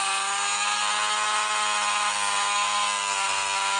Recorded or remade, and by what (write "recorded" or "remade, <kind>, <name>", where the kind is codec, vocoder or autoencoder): recorded